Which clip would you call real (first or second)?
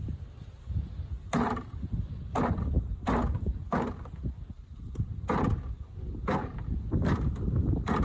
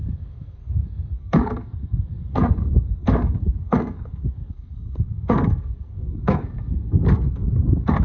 first